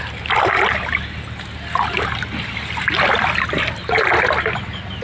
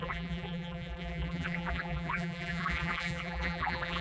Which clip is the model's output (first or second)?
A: second